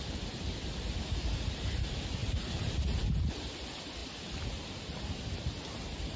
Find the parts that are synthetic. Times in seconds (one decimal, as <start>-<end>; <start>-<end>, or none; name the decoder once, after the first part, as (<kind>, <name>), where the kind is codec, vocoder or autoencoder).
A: 2.2-3.3 (vocoder, BigVGAN v2)